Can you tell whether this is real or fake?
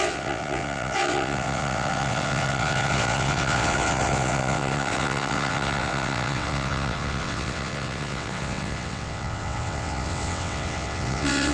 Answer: fake